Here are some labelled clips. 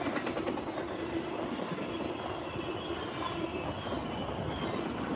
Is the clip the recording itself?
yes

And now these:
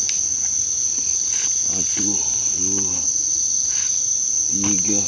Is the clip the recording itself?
yes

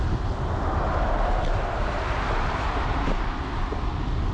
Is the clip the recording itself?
yes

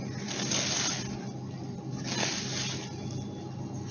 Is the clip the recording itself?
yes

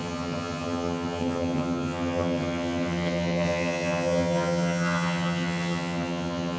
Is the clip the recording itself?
no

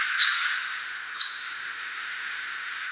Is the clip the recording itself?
no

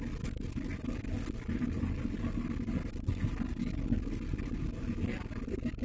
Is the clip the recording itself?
yes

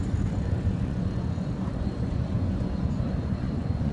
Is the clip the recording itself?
no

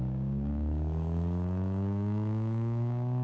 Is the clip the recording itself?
no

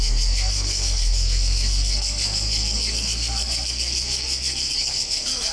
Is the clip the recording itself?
no